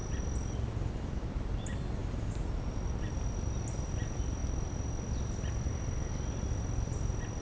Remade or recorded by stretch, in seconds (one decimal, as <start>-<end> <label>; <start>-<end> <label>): 0.0-7.4 recorded